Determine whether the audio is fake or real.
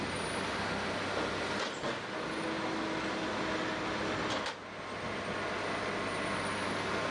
real